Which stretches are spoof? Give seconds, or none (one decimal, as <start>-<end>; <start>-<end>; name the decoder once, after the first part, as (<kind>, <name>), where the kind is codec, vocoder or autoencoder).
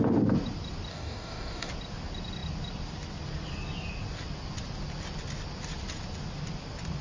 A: 0.9-1.7 (codec, DAC)